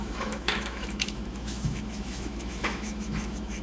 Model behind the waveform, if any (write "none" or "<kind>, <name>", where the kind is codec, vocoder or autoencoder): autoencoder, DAC-VAE